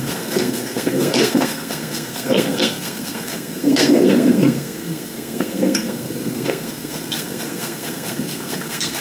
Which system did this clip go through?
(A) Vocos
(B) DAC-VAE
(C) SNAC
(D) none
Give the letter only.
C